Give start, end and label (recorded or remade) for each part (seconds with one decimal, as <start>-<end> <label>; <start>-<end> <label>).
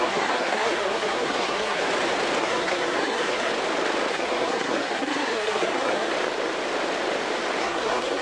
0.0-1.8 remade; 1.8-2.4 recorded; 2.4-3.5 remade; 3.5-4.1 recorded; 4.1-6.1 remade; 6.1-7.6 recorded; 7.6-8.2 remade